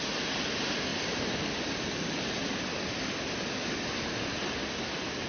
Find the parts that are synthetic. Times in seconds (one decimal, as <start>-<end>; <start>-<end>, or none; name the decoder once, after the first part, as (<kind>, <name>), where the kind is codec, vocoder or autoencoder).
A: none